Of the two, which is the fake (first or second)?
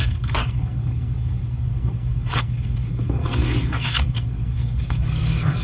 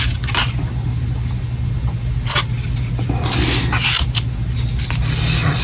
first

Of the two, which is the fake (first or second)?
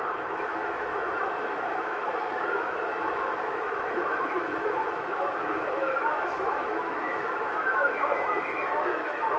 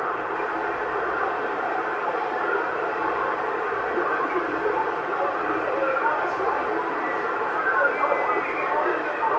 first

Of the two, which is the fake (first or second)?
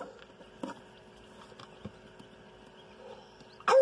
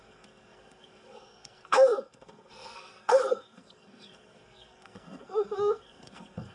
second